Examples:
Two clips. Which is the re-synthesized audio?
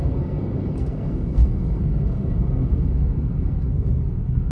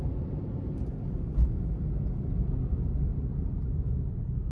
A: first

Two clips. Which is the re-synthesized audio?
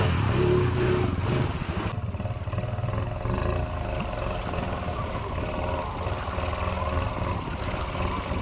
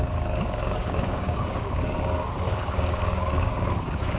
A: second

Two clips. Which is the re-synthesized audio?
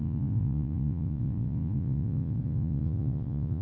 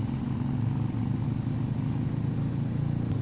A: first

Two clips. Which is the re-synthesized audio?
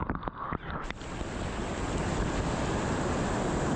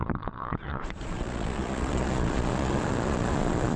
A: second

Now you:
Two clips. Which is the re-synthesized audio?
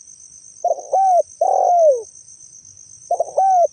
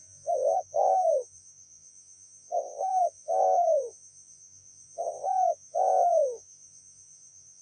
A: second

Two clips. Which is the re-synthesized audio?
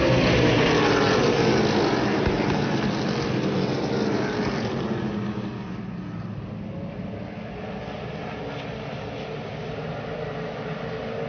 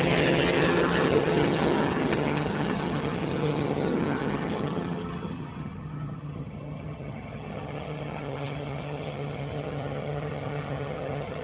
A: second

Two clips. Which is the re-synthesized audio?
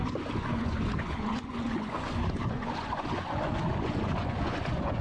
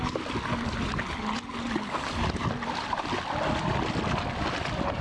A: first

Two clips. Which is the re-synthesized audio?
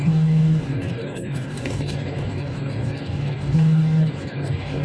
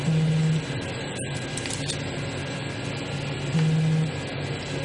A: first